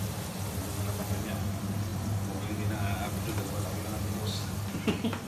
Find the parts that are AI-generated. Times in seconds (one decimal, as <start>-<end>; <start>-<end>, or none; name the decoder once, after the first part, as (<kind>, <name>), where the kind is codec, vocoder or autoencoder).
none